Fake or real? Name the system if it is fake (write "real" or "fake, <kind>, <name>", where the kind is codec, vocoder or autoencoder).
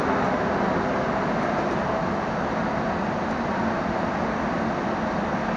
real